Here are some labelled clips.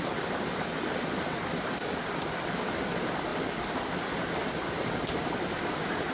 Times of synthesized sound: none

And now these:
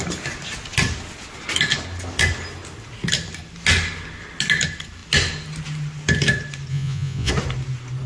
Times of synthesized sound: 6.7-7.3

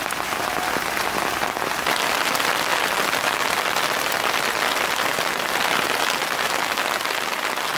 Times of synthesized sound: none